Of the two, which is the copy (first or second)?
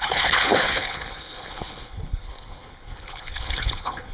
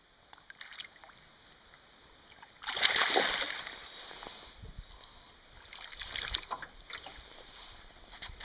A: first